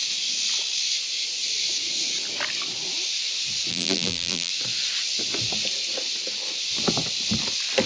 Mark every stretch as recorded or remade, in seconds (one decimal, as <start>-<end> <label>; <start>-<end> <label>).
0.0-3.7 recorded; 3.7-4.5 remade; 4.5-7.9 recorded